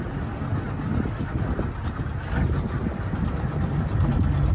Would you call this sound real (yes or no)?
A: yes